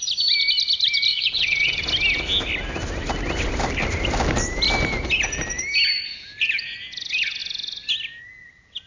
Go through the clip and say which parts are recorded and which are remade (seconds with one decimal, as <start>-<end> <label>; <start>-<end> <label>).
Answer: 0.0-1.1 recorded; 1.1-1.8 remade; 1.8-8.9 recorded